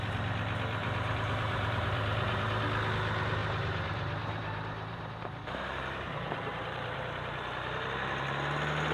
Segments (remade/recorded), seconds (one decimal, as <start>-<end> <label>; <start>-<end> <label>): 0.0-0.8 recorded; 0.8-2.6 remade; 2.6-3.4 recorded; 3.4-7.9 remade; 7.9-8.9 recorded